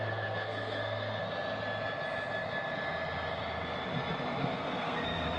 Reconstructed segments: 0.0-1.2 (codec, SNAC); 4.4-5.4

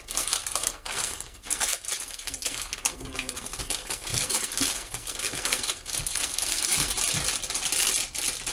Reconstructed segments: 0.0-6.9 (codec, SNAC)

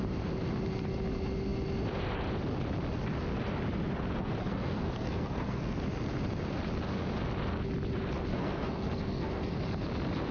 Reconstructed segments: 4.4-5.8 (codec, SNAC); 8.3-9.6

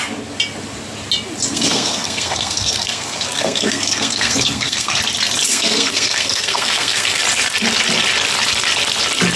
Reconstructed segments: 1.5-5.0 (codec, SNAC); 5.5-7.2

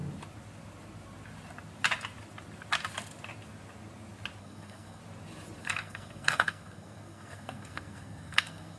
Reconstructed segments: 4.4-5.0 (codec, SNAC); 5.6-8.8